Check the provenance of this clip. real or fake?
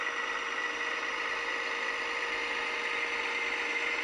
real